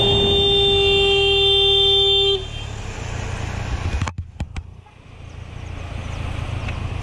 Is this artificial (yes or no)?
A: no